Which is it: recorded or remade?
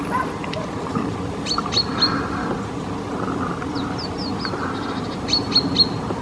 recorded